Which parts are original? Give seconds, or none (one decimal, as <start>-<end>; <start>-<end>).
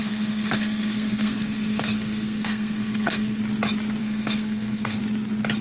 3.4-4.0; 5.0-5.6